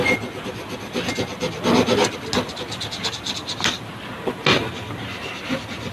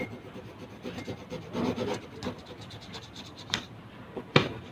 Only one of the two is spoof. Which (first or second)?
second